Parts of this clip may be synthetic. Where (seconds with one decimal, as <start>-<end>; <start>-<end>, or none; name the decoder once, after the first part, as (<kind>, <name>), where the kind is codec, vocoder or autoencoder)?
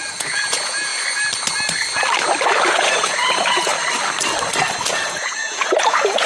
0.0-0.9 (vocoder, Vocos); 2.7-3.7; 4.9-6.3